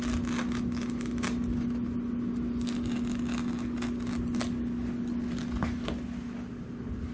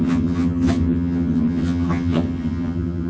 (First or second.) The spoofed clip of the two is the second